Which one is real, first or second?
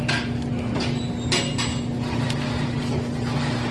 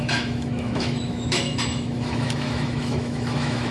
first